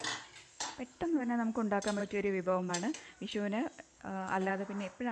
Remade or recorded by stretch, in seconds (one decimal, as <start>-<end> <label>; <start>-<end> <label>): 0.0-0.5 recorded; 0.5-1.2 remade; 1.2-2.0 recorded; 2.0-2.7 remade; 2.7-3.9 recorded; 3.9-4.5 remade; 4.5-5.1 recorded